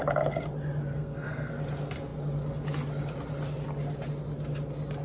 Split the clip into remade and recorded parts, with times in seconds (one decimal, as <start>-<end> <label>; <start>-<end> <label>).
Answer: 0.0-0.9 recorded; 0.9-1.5 remade; 1.5-5.0 recorded